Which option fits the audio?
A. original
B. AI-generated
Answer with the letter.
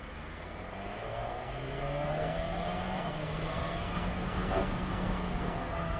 B